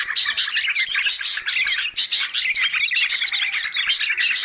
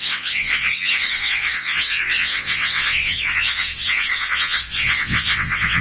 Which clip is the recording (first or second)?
first